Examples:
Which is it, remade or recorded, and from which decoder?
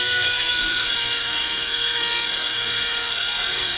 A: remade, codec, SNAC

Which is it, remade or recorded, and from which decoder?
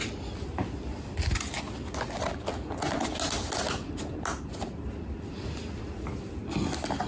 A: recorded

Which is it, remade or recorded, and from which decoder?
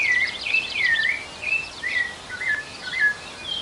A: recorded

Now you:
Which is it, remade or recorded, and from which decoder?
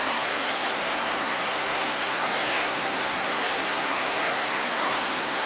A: remade, codec, SNAC